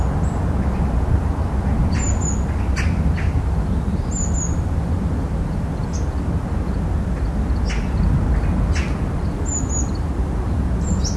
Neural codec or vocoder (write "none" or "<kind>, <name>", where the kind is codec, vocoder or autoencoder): none